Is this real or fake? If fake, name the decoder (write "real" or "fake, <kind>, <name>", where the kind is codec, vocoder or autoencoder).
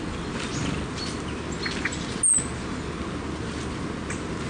real